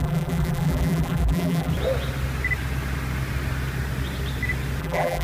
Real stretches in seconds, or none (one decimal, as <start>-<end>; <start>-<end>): 1.7-4.8